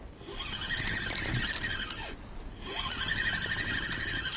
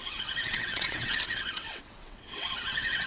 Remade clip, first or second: second